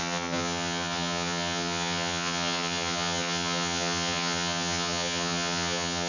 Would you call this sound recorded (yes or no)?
no